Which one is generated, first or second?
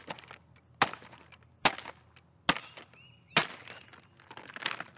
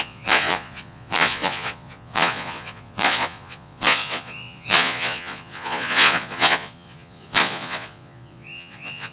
second